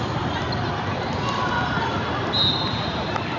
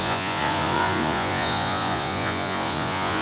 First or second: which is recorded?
first